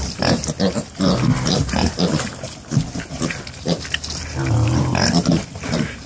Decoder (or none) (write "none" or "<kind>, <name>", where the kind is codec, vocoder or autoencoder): none